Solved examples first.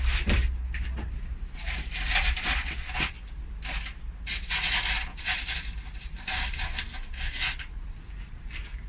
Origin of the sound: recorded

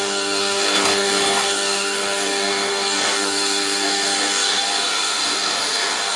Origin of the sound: remade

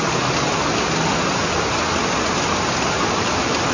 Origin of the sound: recorded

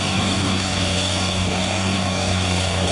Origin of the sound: remade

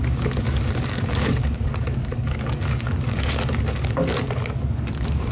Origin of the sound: remade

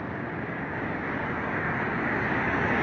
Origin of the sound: remade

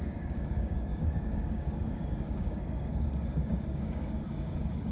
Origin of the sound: remade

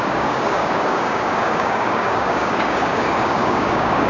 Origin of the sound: remade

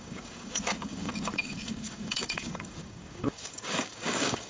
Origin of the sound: remade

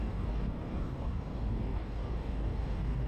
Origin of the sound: remade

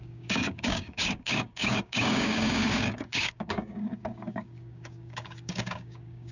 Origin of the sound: remade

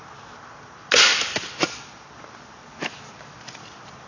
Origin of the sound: recorded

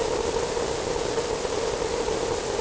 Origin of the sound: recorded